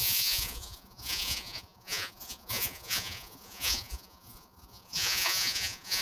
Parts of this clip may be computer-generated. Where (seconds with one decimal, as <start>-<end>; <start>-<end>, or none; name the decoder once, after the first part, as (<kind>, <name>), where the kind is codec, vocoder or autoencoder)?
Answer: 0.0-6.0 (vocoder, Vocos)